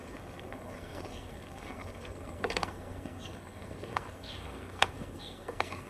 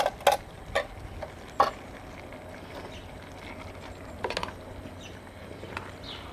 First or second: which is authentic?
second